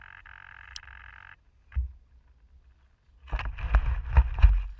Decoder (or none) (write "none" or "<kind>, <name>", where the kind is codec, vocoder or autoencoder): none